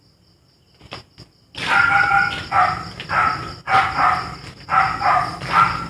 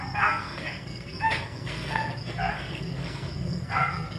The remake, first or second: second